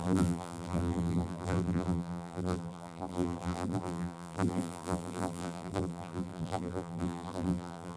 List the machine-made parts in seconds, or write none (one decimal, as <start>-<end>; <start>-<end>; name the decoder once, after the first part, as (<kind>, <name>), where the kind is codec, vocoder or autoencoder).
0.0-8.0 (vocoder, BigVGAN v2)